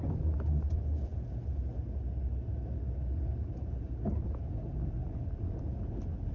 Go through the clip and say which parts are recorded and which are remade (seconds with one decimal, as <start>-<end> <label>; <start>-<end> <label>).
0.0-6.3 recorded